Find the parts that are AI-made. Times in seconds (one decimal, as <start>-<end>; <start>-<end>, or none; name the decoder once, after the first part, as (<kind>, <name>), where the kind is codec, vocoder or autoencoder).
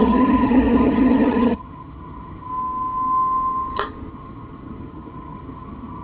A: 0.0-2.5 (vocoder, HiFi-GAN); 4.1-6.0